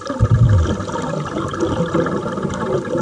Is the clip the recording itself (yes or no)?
yes